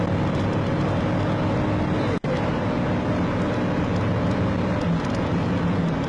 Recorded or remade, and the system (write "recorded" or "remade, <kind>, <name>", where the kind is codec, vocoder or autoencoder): recorded